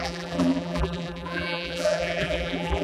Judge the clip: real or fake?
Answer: fake